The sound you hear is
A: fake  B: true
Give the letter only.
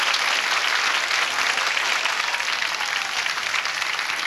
B